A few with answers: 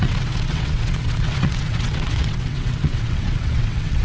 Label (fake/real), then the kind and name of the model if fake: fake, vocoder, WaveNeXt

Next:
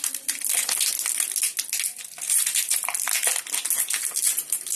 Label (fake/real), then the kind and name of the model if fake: real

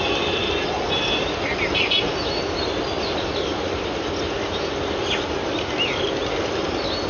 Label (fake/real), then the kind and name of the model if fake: real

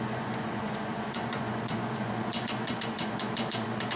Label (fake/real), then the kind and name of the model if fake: fake, vocoder, Vocos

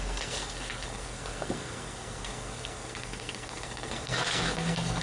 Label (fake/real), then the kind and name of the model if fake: fake, codec, SNAC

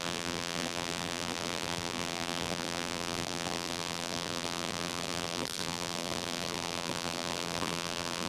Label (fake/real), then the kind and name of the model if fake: fake, vocoder, BigVGAN v2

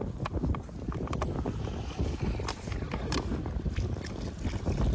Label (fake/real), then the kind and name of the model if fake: real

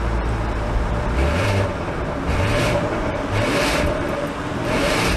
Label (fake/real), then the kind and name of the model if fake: fake, vocoder, BigVGAN v2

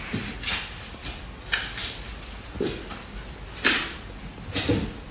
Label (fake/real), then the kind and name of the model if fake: real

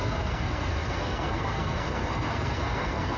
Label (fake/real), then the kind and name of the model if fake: fake, codec, SNAC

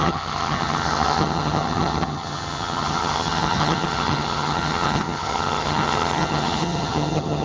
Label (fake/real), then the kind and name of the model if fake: fake, vocoder, HiFi-GAN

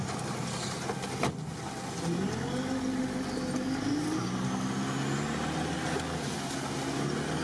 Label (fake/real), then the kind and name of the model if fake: real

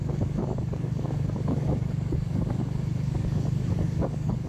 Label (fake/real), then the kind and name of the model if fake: fake, codec, DAC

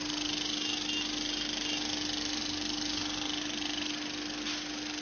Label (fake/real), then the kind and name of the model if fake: real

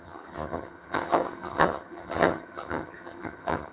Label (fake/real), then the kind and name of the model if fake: fake, vocoder, HiFi-GAN